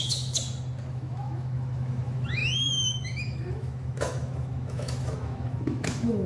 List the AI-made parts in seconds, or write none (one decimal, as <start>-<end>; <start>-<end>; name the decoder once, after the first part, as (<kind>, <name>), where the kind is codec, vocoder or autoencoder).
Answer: 0.0-0.4 (autoencoder, DAC-VAE); 0.9-6.3